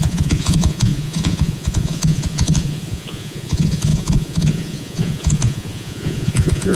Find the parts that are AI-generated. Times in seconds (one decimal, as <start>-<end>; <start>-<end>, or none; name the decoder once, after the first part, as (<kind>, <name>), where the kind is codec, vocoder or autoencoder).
0.0-6.7 (vocoder, Vocos)